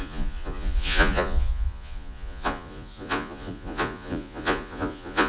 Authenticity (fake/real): fake